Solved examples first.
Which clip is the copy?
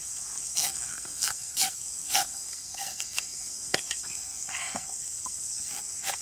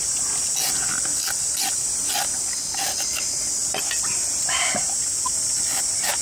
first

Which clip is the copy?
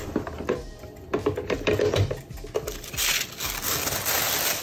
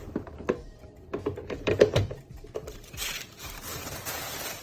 second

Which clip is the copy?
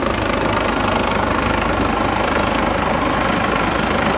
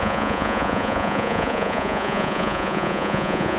second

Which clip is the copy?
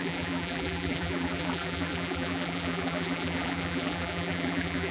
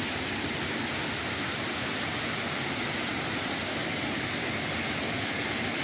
first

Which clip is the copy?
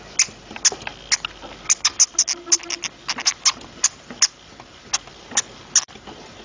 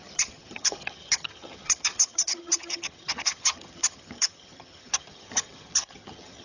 second